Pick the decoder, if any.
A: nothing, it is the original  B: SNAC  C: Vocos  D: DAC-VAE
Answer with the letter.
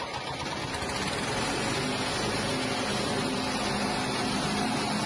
A